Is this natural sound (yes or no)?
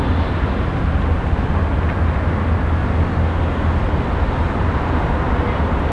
yes